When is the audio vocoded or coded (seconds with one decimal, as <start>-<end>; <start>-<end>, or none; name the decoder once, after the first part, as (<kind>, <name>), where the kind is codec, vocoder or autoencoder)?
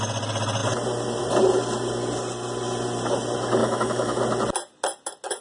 3.6-4.2 (autoencoder, DAC-VAE)